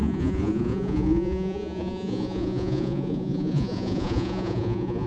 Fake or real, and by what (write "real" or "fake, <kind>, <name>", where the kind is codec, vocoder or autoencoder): fake, vocoder, Vocos